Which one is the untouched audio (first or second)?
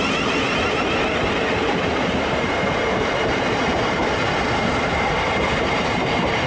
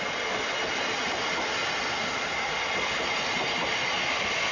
second